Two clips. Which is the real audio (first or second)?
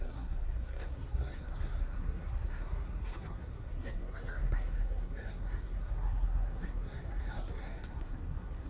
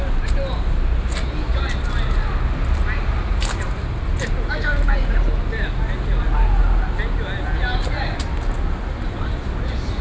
second